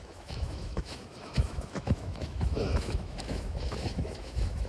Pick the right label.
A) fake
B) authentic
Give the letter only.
A